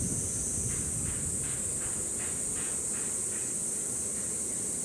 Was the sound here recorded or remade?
recorded